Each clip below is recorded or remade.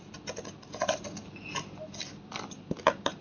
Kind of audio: recorded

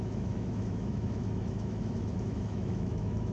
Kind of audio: remade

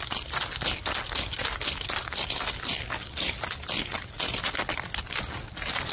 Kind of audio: recorded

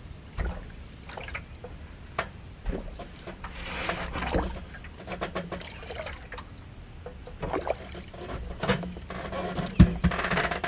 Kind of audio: recorded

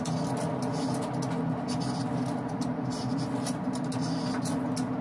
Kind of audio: recorded